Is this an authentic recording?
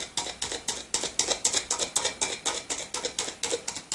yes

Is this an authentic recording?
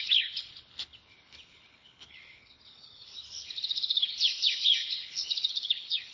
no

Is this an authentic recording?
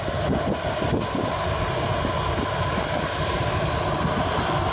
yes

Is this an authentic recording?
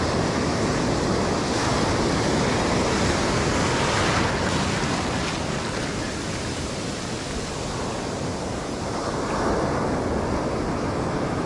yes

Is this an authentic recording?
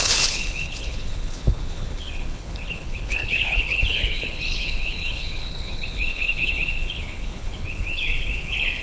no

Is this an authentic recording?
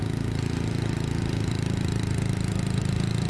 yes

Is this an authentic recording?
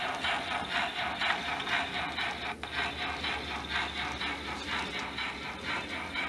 yes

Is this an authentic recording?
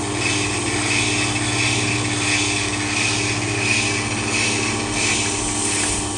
yes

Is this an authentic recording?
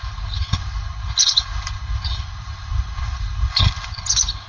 no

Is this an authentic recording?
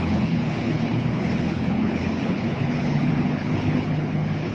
no